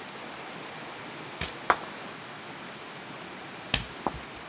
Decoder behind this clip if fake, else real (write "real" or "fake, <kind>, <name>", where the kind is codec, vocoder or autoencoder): real